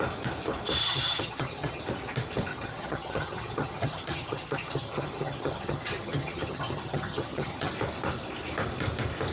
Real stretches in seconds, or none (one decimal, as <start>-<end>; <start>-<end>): 0.0-0.8; 1.8-2.5; 7.7-9.3